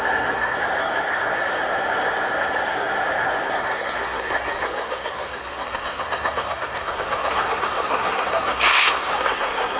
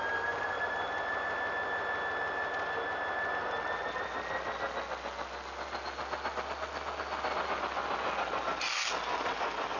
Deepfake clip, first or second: first